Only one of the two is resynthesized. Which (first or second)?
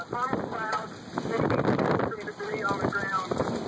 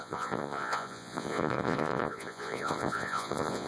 second